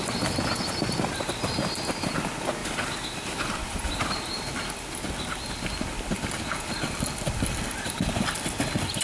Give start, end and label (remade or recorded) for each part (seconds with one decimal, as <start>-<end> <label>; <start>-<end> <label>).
0.0-2.6 recorded; 2.6-4.5 remade; 4.5-9.0 recorded